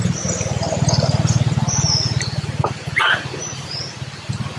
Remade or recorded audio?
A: recorded